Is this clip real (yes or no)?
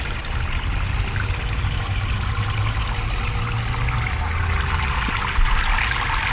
yes